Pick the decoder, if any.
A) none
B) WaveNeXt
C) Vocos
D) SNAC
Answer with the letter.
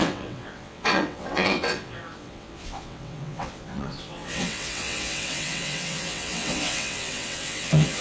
B